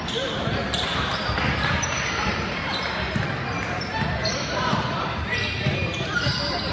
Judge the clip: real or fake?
fake